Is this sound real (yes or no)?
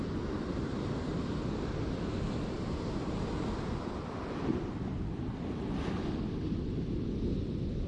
yes